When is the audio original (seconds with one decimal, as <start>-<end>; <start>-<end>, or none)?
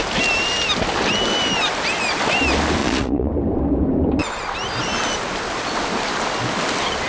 0.0-2.8; 3.3-7.1